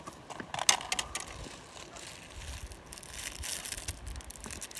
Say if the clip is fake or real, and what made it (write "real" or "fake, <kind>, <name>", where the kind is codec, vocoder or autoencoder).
real